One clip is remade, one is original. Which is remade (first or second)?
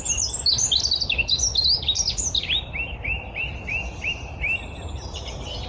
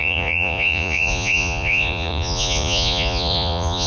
second